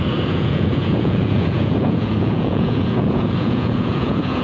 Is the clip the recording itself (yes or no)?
no